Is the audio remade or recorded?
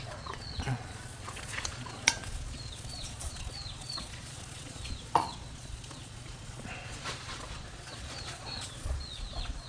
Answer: remade